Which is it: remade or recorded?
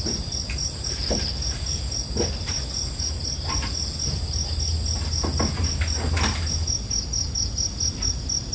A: recorded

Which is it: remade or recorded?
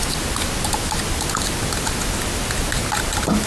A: recorded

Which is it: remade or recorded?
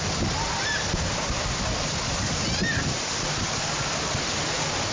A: recorded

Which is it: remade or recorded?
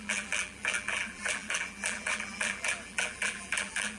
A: remade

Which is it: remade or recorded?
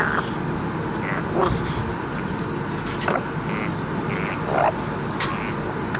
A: recorded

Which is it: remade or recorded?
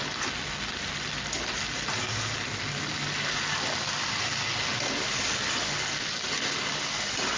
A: recorded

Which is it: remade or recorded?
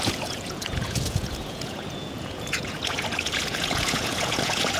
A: remade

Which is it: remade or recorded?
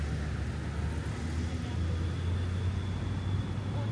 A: recorded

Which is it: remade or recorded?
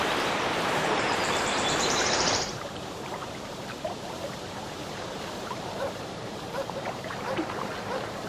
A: remade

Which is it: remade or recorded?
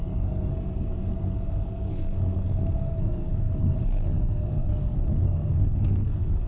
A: remade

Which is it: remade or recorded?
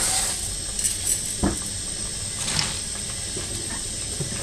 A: recorded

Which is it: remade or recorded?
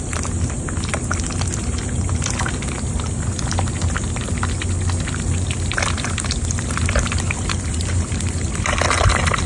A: recorded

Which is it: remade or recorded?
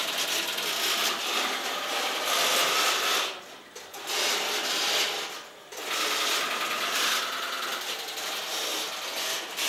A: recorded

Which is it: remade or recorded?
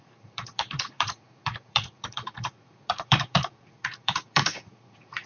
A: remade